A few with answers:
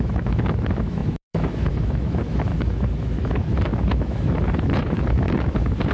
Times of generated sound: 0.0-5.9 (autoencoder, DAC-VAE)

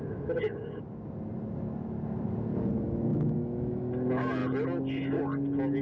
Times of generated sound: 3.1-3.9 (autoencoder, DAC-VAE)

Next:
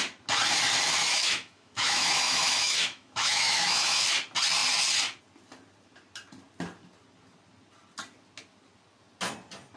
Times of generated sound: 1.0-4.0 (autoencoder, DAC-VAE)

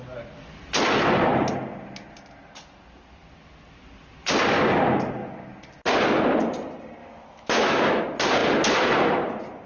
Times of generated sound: 7.0-8.0 (autoencoder, DAC-VAE)